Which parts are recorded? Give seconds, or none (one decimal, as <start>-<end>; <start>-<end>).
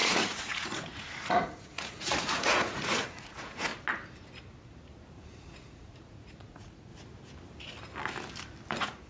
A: 3.7-5.1; 6.9-8.7